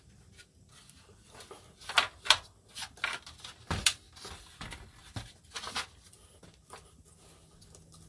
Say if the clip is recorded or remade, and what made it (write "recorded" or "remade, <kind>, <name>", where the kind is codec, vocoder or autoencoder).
recorded